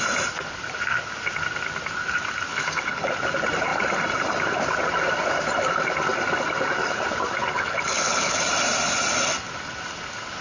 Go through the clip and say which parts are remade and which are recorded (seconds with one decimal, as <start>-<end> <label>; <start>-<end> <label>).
0.0-2.5 recorded; 2.5-3.1 remade; 3.1-7.4 recorded; 7.4-8.4 remade; 8.4-10.4 recorded